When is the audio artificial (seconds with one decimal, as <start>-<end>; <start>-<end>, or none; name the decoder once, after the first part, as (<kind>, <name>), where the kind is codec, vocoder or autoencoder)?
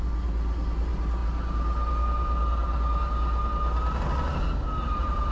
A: none